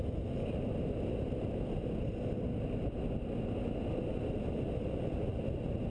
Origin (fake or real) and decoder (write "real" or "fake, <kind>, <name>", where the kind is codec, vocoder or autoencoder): real